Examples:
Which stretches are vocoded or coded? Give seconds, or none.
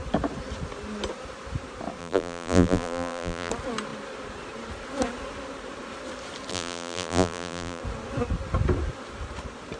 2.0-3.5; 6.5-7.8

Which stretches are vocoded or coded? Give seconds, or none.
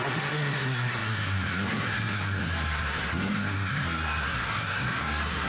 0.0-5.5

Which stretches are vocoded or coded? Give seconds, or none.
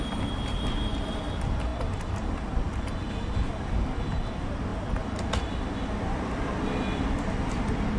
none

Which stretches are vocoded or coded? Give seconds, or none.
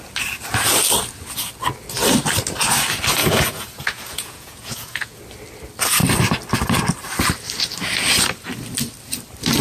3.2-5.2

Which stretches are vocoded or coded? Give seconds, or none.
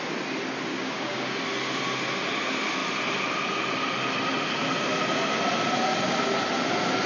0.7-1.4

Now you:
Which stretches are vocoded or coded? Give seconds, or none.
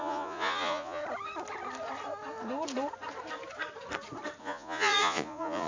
0.0-1.0; 4.4-5.7